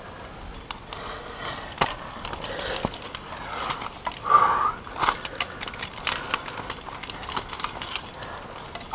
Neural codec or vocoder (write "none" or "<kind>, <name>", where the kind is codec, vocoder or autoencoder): none